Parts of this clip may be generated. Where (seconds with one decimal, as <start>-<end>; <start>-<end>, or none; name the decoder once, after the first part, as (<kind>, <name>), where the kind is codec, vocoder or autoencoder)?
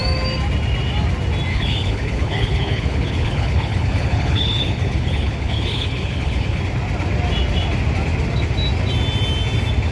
1.5-6.6 (codec, HILCodec)